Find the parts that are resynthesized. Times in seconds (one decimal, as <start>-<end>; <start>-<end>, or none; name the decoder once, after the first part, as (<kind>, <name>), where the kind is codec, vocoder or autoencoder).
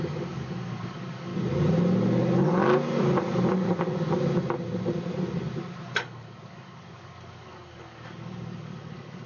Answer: 0.0-1.3 (codec, DAC); 5.9-9.3